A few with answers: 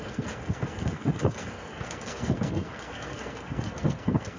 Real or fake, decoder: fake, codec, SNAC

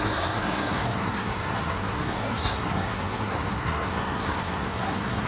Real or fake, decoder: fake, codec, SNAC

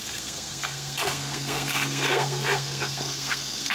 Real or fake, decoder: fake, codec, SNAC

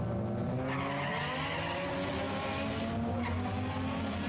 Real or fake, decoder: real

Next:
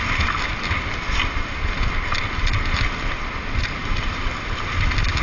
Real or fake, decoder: real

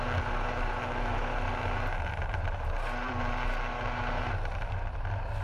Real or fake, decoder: real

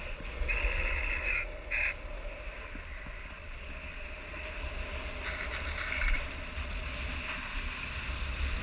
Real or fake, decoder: real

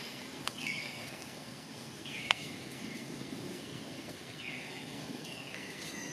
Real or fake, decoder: fake, codec, SNAC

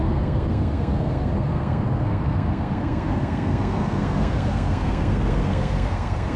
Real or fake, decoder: fake, codec, SNAC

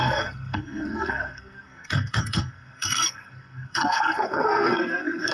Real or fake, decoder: fake, codec, SNAC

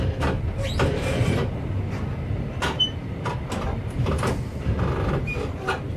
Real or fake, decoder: real